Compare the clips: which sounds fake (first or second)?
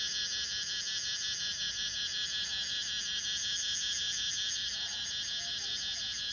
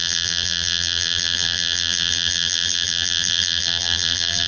second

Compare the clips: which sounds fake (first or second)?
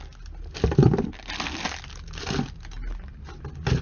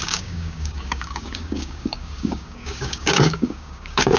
second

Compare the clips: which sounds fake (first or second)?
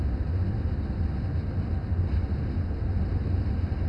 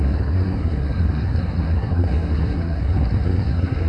second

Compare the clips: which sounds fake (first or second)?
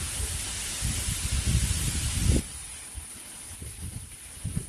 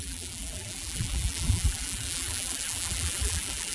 second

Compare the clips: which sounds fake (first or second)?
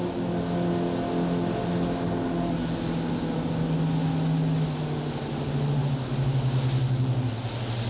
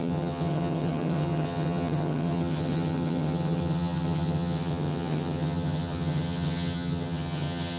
second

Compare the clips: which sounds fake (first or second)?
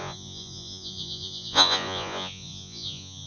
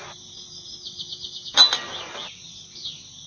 first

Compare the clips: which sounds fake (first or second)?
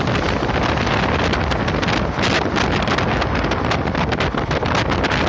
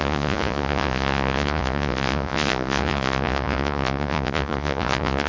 second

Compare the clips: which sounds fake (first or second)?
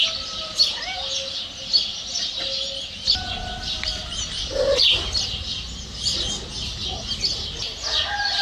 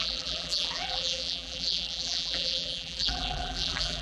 second